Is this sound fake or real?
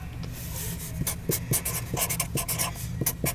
real